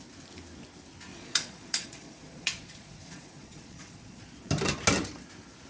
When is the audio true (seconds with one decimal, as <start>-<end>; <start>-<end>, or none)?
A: 0.0-1.1; 4.5-5.7